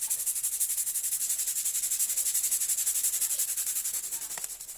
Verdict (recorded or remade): recorded